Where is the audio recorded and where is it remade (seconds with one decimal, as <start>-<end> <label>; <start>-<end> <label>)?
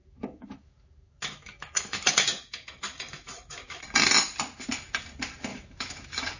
0.0-3.8 remade; 3.8-5.5 recorded; 5.5-6.4 remade